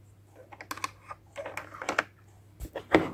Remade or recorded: recorded